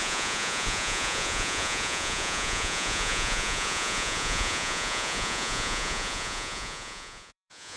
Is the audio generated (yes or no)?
yes